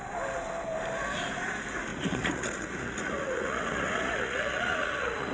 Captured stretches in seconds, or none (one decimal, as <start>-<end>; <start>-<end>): 0.0-1.9